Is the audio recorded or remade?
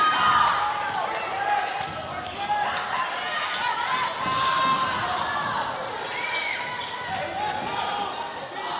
recorded